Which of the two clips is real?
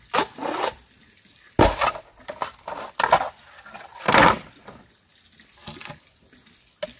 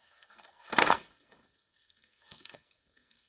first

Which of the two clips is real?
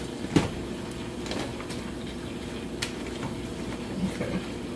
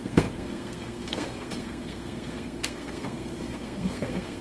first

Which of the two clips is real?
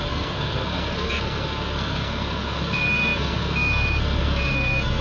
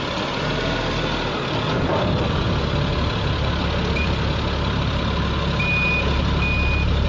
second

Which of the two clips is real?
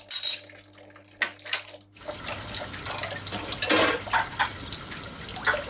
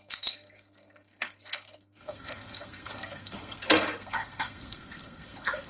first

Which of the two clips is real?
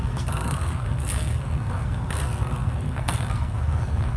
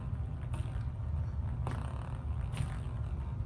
second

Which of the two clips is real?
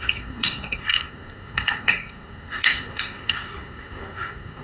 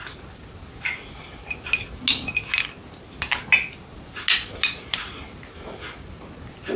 second